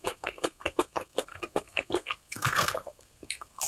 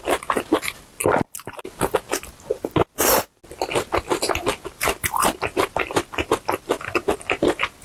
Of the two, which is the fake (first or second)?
first